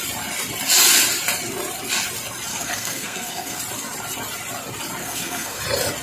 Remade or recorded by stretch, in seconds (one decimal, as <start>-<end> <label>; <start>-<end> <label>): 0.0-2.5 recorded; 2.5-3.6 remade; 3.6-5.0 recorded; 5.0-5.6 remade; 5.6-6.0 recorded